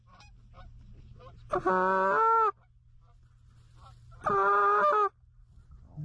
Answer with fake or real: real